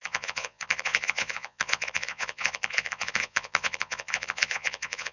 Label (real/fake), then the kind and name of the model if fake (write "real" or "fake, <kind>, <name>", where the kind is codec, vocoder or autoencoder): fake, vocoder, Vocos